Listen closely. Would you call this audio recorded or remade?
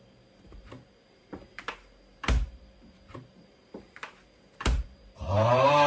remade